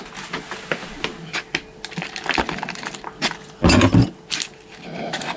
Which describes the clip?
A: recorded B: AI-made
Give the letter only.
A